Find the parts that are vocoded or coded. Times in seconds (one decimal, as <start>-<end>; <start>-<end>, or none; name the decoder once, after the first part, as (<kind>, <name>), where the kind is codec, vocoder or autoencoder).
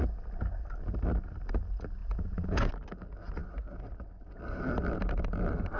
2.0-2.7 (vocoder, Vocos)